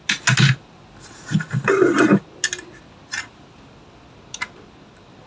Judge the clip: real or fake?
real